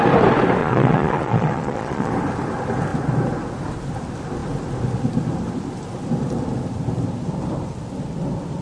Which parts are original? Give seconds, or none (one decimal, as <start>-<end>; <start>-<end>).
0.0-0.6; 2.1-8.6